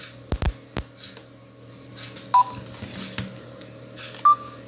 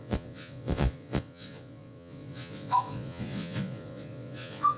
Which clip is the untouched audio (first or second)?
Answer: first